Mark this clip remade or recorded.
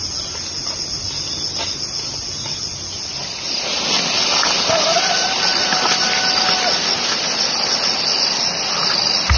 recorded